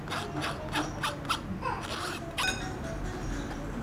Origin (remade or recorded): recorded